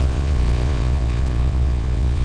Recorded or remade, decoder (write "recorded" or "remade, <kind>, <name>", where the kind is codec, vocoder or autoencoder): remade, vocoder, Vocos